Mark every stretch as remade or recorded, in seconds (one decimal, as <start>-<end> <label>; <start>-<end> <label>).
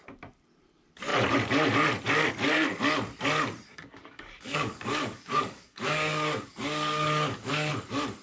0.0-3.7 recorded; 3.7-7.7 remade; 7.7-8.2 recorded